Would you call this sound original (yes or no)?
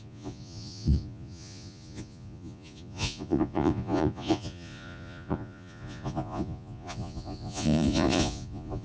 no